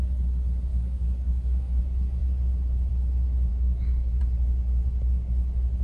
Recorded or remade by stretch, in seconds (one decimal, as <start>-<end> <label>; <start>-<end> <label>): 0.0-0.7 recorded; 0.7-1.8 remade; 1.8-3.5 recorded; 3.5-4.2 remade; 4.2-5.8 recorded